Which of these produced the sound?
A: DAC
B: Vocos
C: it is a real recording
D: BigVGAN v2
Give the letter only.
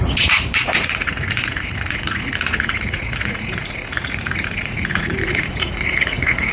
B